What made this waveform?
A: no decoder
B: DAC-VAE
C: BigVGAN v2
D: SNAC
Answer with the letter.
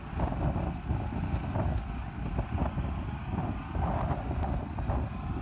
A